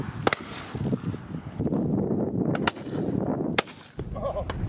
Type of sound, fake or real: real